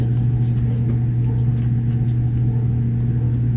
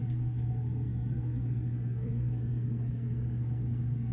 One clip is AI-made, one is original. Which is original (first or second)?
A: first